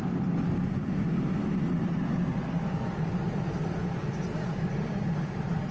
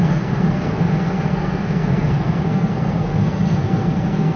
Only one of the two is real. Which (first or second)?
first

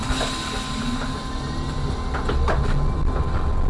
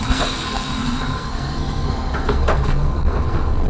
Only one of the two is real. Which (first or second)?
first